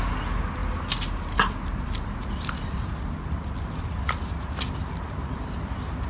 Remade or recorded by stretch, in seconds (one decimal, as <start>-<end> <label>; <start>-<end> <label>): 0.0-6.1 recorded